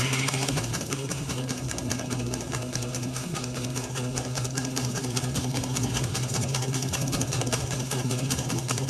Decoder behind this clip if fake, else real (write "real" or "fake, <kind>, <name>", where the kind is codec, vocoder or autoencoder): fake, codec, SNAC